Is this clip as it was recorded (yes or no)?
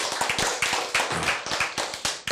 yes